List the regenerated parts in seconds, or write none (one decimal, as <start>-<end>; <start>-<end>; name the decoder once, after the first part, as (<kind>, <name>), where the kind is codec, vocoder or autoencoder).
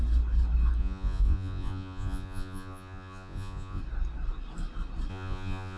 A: 0.8-3.8 (vocoder, Vocos); 5.1-5.8